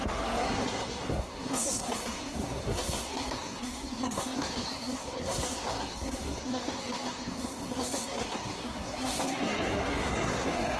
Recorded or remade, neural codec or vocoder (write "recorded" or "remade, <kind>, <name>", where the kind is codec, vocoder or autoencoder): remade, codec, SNAC